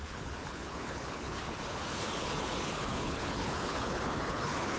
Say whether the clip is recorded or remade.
remade